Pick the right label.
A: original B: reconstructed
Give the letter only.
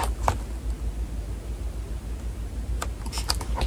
A